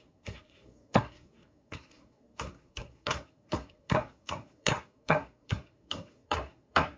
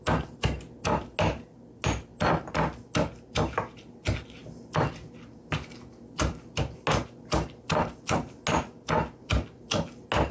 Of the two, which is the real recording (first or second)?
second